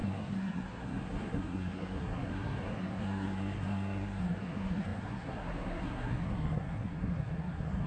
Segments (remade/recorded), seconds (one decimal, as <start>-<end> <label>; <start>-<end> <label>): 0.0-7.9 remade